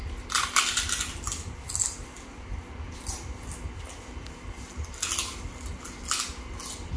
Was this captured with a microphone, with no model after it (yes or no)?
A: yes